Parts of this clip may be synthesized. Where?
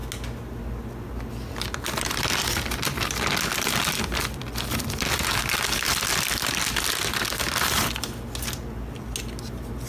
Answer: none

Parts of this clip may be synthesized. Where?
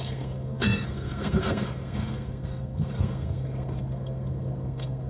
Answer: 0.0-5.1 (codec, SNAC)